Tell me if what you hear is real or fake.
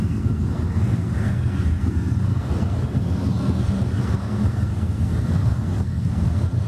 fake